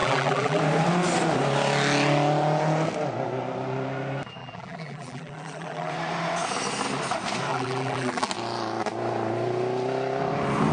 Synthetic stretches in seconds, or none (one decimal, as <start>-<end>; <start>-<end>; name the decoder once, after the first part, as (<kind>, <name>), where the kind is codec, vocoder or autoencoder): 0.0-0.6 (vocoder, BigVGAN v2); 4.4-5.9; 7.5-8.3